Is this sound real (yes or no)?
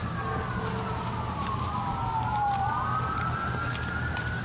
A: yes